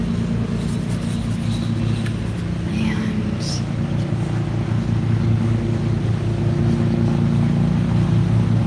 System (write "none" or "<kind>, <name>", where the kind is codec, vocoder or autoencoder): none